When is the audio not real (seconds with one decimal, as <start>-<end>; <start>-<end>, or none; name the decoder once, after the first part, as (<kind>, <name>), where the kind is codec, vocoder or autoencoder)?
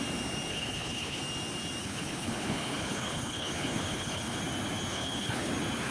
0.5-1.2 (codec, HILCodec); 1.8-4.4; 4.9-5.5